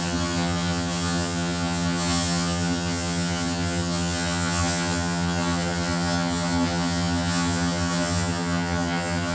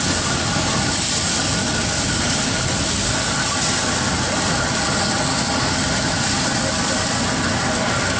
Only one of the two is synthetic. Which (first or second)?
first